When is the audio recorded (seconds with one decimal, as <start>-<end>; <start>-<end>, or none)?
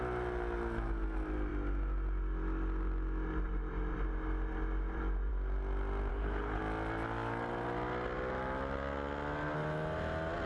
0.0-6.1; 6.6-10.5